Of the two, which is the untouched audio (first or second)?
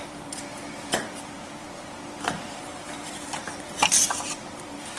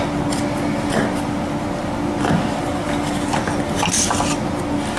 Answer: second